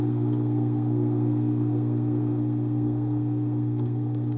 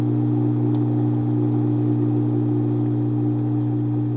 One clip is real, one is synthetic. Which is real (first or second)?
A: second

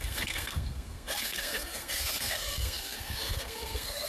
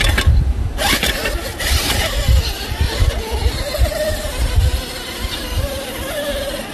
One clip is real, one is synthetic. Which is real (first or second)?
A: second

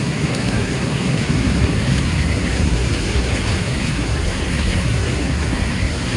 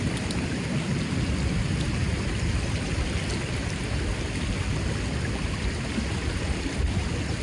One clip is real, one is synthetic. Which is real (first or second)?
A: second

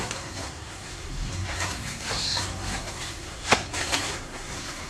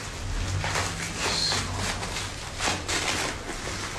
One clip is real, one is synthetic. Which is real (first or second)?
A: second